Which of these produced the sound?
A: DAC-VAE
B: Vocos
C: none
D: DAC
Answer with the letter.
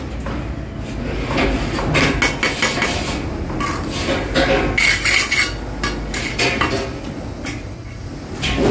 C